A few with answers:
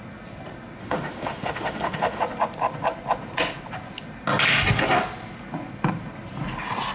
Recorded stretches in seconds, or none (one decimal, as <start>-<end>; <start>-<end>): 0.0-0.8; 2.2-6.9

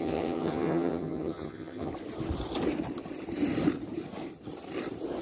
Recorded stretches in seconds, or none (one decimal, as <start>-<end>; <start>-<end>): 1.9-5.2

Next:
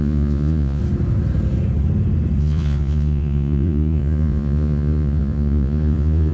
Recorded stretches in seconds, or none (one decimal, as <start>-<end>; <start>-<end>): 0.8-2.4